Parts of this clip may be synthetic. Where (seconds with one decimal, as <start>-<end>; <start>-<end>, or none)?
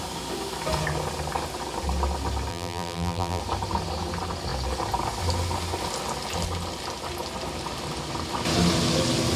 2.5-3.4